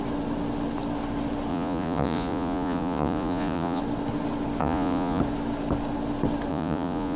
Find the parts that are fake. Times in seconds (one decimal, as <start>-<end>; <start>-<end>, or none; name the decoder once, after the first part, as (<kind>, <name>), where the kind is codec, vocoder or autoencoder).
1.5-3.8 (vocoder, Vocos); 4.6-5.2; 6.5-7.2